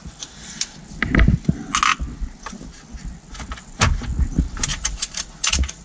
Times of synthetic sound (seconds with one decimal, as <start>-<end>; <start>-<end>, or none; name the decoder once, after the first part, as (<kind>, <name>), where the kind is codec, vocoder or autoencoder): 4.7-5.8 (vocoder, Vocos)